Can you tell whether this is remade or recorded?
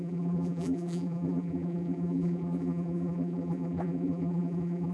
remade